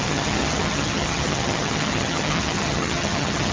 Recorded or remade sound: remade